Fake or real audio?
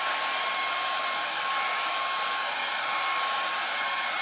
real